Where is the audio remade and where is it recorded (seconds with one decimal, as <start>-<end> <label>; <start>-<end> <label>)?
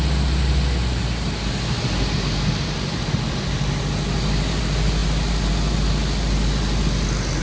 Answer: 0.0-7.4 recorded